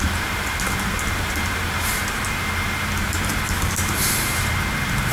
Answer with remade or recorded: remade